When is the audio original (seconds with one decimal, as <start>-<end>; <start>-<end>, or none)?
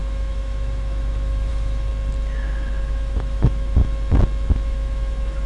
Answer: 1.9-2.8; 3.8-4.5